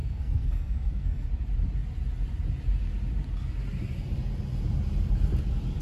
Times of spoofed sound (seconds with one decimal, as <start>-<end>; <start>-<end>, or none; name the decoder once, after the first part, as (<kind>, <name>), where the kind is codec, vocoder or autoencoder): 0.0-1.3 (codec, SNAC)